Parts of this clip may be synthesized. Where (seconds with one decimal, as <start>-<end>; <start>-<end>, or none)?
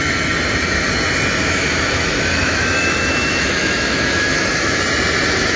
1.4-4.8